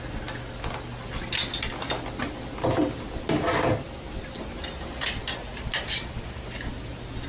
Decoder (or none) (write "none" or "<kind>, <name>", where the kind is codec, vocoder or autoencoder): none